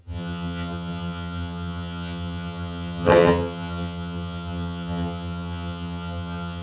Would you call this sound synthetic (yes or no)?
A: yes